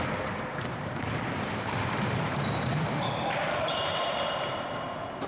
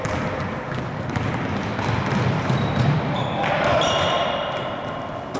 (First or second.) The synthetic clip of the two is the first